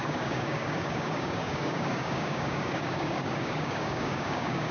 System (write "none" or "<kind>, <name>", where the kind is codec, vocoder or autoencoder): codec, DAC